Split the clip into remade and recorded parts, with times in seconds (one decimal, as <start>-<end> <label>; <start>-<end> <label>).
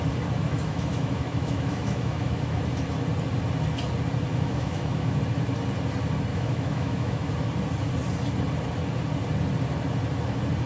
0.0-0.4 recorded; 0.4-2.6 remade; 2.6-4.3 recorded; 4.3-5.2 remade; 5.2-6.3 recorded; 6.3-7.3 remade; 7.3-10.7 recorded